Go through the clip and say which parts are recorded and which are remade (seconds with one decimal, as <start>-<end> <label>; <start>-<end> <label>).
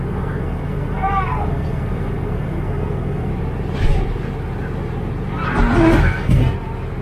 0.0-3.3 remade; 3.3-6.0 recorded; 6.0-6.4 remade; 6.4-7.0 recorded